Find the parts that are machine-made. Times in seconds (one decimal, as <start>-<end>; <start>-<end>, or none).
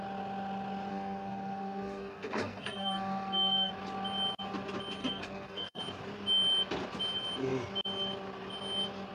0.9-3.7; 5.0-5.8